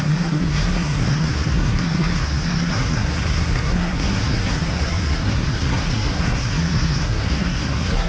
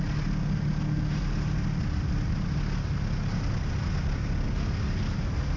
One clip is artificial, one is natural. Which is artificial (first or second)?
first